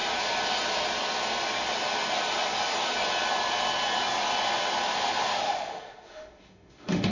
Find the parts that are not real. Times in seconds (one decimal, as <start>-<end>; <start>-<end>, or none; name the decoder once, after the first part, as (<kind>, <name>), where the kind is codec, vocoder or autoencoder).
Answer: 5.4-7.1 (autoencoder, DAC-VAE)